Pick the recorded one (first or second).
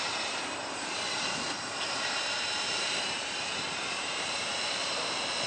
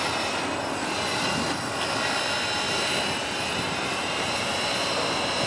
second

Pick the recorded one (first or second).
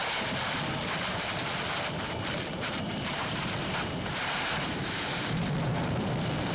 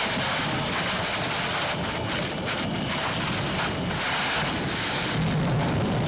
second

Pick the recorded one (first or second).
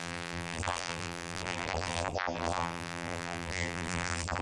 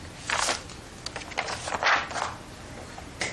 second